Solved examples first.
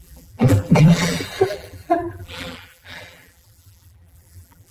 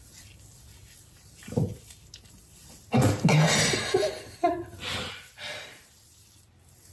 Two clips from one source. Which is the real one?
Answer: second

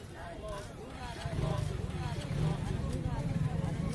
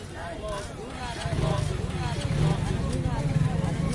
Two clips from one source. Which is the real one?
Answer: second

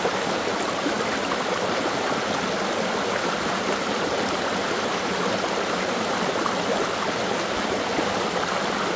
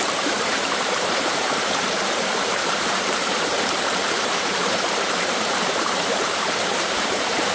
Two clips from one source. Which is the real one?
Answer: first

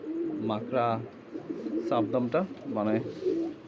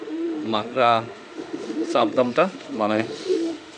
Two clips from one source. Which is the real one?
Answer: first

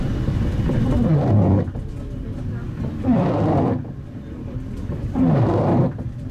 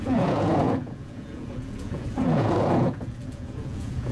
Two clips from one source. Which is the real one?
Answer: first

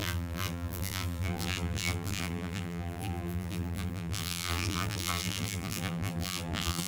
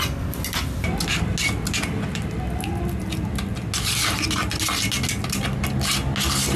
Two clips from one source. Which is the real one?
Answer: second